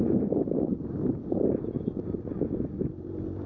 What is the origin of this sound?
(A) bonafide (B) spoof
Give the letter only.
A